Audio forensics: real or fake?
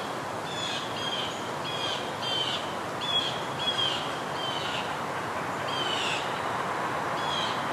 real